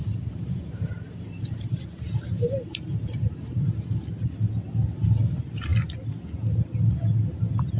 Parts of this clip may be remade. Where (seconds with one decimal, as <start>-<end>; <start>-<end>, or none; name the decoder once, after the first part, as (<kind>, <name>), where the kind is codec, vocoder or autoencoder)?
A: 0.0-3.6 (vocoder, BigVGAN v2)